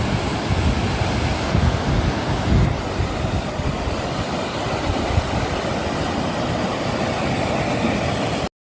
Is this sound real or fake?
real